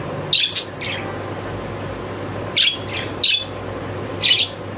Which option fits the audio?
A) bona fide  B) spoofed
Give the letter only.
A